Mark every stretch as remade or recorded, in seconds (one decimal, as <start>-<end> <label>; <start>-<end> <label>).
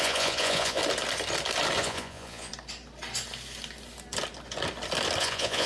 0.0-0.8 remade; 0.8-1.8 recorded; 1.8-2.5 remade; 2.5-5.2 recorded; 5.2-5.7 remade